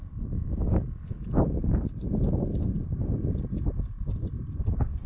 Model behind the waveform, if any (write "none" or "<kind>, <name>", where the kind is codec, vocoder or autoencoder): none